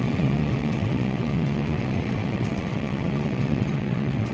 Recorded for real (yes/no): no